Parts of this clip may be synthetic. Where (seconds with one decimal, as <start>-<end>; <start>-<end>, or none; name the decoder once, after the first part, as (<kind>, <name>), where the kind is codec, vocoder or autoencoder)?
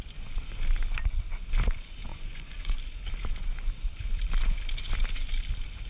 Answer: 2.1-2.8 (vocoder, Vocos)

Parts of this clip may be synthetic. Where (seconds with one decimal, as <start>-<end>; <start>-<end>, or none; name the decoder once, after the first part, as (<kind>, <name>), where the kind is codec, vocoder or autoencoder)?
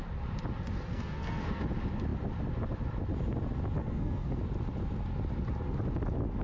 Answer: 0.9-1.6 (codec, SNAC); 3.8-4.4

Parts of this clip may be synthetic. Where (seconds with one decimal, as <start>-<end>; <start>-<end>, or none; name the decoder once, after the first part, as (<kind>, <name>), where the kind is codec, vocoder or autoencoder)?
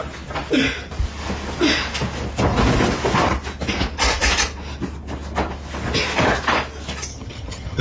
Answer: 7.1-7.8 (vocoder, HiFi-GAN)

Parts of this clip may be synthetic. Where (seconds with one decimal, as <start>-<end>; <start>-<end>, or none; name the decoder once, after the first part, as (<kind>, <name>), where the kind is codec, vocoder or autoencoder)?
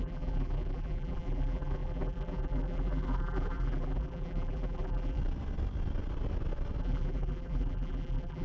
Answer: 0.0-5.2 (vocoder, BigVGAN v2); 6.8-8.4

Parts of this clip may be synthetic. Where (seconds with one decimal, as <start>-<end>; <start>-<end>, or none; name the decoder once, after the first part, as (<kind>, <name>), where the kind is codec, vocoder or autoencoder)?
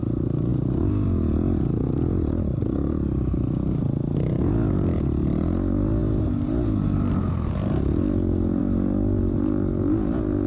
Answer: none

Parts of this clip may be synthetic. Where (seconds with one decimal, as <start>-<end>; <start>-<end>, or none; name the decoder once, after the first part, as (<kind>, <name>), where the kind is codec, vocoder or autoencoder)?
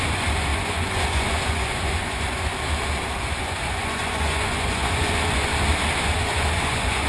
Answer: 0.0-2.5 (vocoder, Vocos); 3.3-5.5; 6.0-7.1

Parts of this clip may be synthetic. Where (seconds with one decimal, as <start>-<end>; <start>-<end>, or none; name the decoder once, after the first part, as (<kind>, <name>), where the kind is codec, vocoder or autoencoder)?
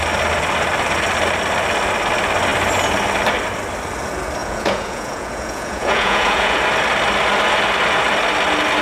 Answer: 4.4-6.6 (vocoder, Vocos)